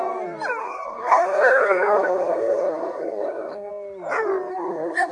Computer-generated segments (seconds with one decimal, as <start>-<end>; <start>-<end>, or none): 0.6-3.7; 4.5-5.1